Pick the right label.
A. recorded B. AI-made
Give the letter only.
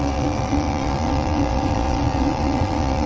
B